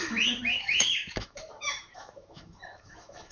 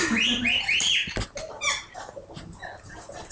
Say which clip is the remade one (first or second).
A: first